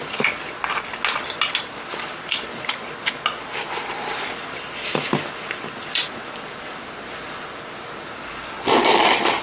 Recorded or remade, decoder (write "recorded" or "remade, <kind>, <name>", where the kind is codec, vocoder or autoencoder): recorded